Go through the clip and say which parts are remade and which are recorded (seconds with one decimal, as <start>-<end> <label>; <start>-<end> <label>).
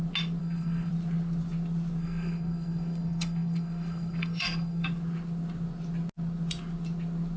0.0-0.4 recorded; 0.4-0.9 remade; 0.9-2.0 recorded; 2.0-4.9 remade; 4.9-7.4 recorded